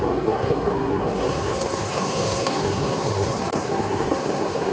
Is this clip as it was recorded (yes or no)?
no